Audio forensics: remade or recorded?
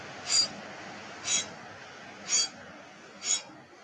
recorded